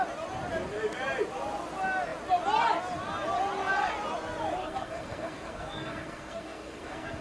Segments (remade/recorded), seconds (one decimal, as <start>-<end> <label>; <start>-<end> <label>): 0.0-4.6 recorded; 4.6-7.2 remade